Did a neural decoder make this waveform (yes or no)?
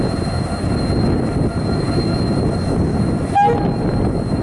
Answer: no